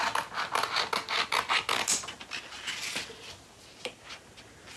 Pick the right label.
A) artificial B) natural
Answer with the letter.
B